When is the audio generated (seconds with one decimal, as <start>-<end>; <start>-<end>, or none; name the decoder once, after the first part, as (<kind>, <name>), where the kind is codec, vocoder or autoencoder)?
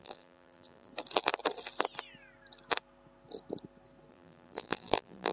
0.0-0.9 (vocoder, BigVGAN v2); 4.1-5.3